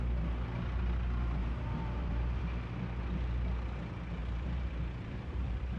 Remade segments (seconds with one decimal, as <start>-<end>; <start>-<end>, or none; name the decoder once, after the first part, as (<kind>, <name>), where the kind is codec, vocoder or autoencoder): 1.4-2.4 (vocoder, BigVGAN v2); 4.2-5.8